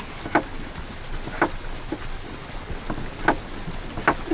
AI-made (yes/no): no